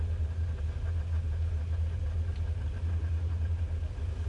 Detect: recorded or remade recorded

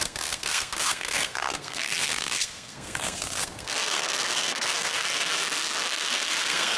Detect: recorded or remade remade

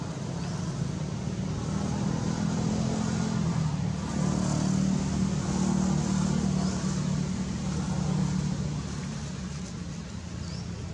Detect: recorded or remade recorded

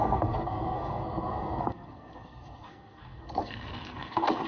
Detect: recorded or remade remade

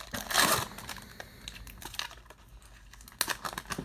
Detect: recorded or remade recorded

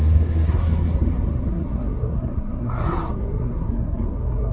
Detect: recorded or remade remade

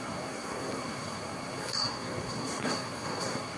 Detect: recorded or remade remade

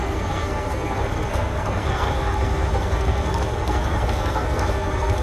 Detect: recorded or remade remade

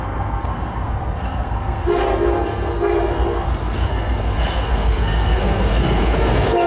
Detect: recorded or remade remade